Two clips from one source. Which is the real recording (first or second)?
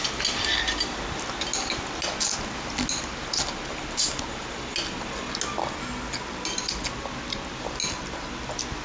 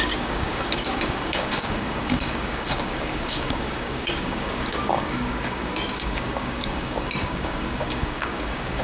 first